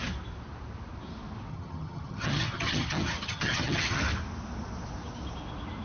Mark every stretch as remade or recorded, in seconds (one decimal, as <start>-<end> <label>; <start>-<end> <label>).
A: 0.0-1.5 recorded; 1.5-4.0 remade; 4.0-5.8 recorded